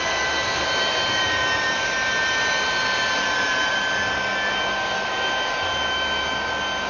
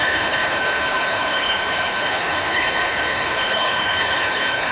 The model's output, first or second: second